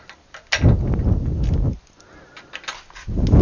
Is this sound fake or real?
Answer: real